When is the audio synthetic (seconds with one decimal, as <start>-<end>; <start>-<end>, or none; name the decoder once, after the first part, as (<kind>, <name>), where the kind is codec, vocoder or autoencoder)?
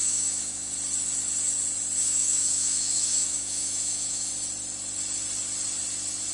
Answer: 0.0-0.7 (autoencoder, DAC-VAE); 2.0-4.3